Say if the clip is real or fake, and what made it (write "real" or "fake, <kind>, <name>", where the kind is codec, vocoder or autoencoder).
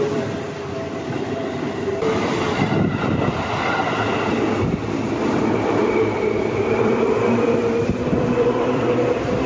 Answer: fake, vocoder, BigVGAN v2